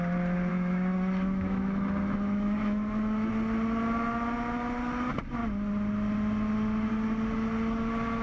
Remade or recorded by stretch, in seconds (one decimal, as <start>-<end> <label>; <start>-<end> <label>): 0.0-0.5 recorded; 0.5-3.3 remade; 3.3-8.2 recorded